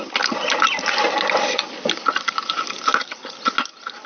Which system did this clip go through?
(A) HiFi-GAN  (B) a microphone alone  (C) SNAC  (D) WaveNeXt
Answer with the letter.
B